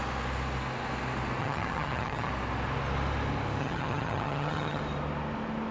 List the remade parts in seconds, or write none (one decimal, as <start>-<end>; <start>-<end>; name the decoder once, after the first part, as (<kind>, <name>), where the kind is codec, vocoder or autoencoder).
1.4-2.3 (vocoder, HiFi-GAN); 3.6-4.8